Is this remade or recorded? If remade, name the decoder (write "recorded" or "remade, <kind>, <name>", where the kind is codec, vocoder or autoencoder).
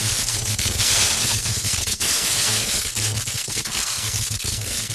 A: remade, codec, SNAC